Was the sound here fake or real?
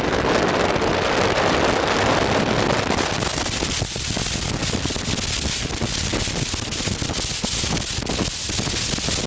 real